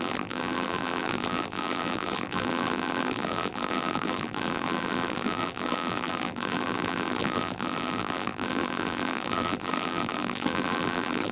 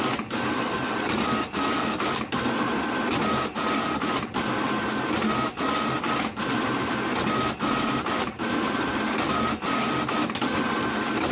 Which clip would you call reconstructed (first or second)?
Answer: first